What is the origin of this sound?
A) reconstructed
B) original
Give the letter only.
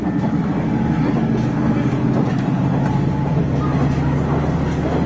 B